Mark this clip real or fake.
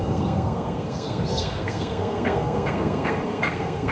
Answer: fake